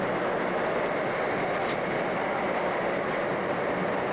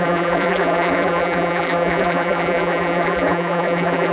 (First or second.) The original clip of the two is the first